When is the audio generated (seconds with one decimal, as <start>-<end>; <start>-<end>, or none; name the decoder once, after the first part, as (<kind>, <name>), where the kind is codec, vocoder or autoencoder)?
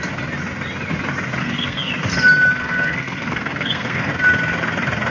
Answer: 1.4-1.9 (codec, SNAC); 2.6-4.1